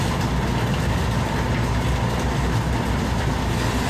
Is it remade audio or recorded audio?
recorded